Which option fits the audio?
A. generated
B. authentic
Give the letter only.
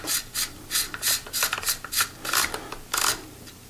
B